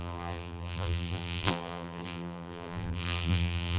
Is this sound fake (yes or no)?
yes